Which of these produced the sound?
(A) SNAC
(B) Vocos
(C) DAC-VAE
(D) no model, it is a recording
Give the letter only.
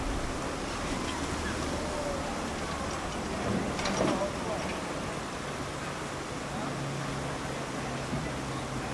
D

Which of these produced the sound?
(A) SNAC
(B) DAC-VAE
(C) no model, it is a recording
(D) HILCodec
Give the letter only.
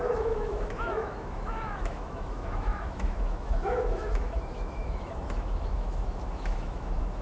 B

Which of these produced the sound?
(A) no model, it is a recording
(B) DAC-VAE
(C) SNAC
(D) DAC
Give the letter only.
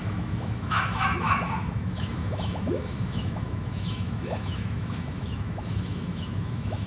B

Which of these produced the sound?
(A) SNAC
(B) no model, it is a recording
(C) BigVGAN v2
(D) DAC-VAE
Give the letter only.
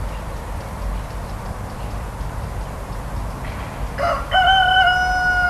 B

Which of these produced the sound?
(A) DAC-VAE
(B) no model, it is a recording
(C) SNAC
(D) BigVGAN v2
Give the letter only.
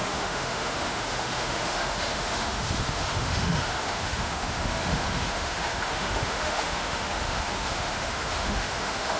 A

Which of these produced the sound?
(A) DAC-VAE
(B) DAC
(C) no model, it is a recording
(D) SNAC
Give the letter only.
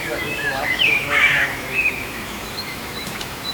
A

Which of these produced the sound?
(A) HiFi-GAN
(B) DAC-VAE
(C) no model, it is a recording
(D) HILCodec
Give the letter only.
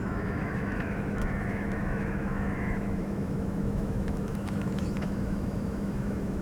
B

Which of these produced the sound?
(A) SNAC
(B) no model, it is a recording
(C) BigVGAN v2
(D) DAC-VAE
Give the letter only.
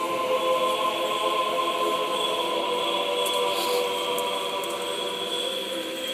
B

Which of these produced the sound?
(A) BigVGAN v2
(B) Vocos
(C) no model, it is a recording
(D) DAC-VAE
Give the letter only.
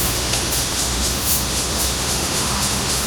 D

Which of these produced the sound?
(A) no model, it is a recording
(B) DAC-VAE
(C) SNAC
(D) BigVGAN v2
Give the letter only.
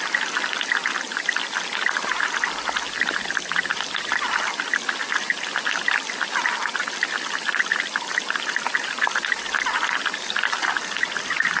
A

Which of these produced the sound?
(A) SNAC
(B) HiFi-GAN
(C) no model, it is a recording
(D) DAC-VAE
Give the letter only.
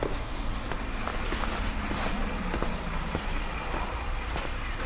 C